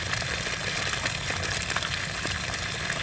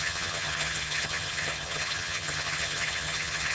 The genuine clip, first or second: first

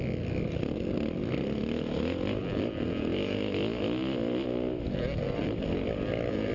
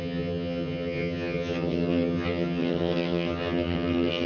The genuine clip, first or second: first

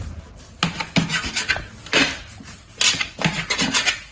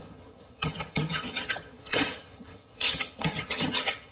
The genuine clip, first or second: first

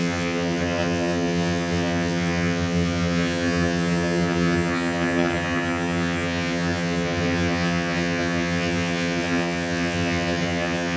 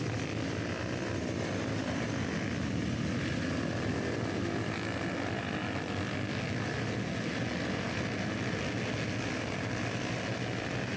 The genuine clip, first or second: second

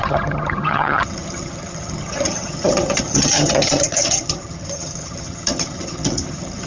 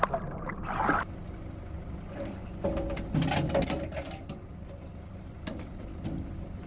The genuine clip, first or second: second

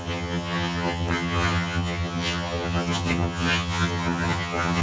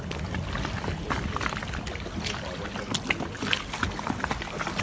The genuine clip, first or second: second